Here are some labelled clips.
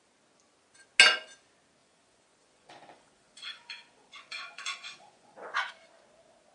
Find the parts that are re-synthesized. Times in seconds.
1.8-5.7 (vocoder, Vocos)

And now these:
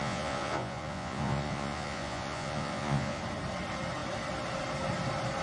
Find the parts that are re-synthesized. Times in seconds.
0.0-3.2 (vocoder, Vocos)

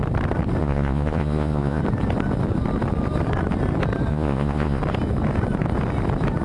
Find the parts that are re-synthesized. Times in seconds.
0.6-1.8 (vocoder, Vocos); 4.1-4.8